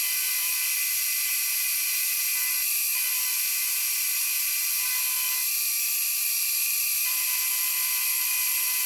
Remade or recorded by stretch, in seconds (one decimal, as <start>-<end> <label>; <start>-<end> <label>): 0.0-6.2 recorded; 6.2-8.3 remade; 8.3-8.9 recorded